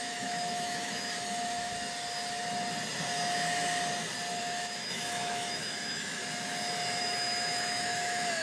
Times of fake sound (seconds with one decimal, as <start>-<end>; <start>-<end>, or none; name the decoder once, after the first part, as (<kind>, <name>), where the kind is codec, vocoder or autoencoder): 0.0-1.7 (autoencoder, DAC-VAE); 4.4-6.2; 7.0-8.4